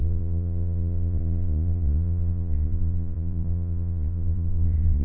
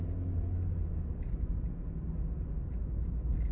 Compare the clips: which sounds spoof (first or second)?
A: first